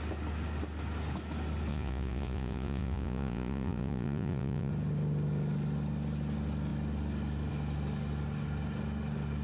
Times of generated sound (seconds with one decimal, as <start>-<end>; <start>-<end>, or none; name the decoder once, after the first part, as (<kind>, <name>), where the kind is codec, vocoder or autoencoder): 1.7-4.7 (vocoder, Vocos)